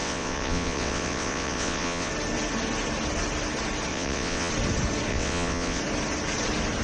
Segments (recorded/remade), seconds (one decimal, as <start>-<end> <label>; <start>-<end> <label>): 0.0-2.1 remade; 2.1-3.9 recorded; 3.9-4.5 remade; 4.5-5.1 recorded; 5.1-5.8 remade; 5.8-6.8 recorded